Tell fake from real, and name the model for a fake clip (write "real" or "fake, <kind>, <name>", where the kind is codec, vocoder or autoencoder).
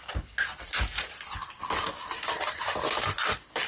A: real